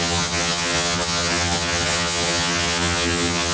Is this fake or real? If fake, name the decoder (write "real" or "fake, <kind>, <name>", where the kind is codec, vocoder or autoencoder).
fake, vocoder, HiFi-GAN